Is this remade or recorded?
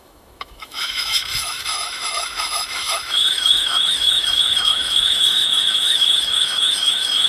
remade